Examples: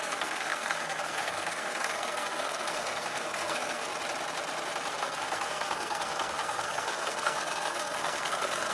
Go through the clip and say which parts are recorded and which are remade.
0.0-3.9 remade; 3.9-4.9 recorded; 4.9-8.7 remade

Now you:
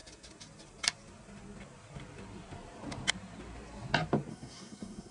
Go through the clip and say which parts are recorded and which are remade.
0.0-4.3 recorded; 4.3-5.1 remade

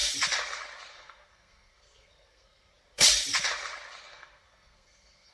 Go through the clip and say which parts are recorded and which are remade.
0.0-0.9 recorded; 0.9-2.7 remade; 2.7-4.1 recorded; 4.1-5.3 remade